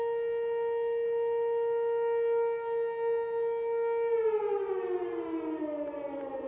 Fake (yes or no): no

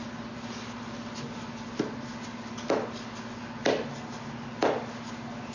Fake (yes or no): no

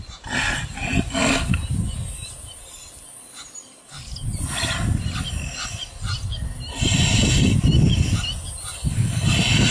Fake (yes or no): no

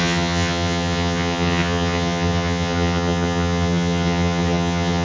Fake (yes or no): yes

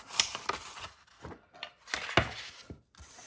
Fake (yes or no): no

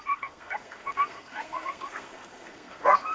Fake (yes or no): yes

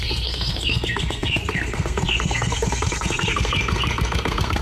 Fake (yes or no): yes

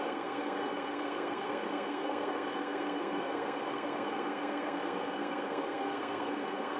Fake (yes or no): yes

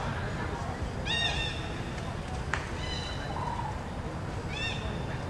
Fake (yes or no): no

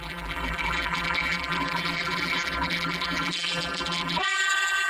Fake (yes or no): yes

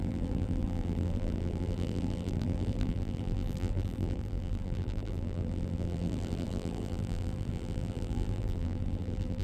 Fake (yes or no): yes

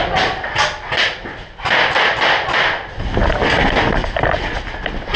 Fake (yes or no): no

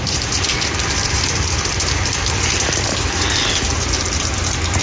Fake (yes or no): yes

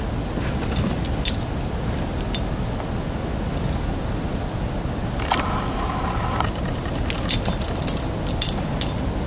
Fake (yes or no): no